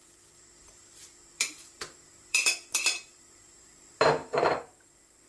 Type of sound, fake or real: fake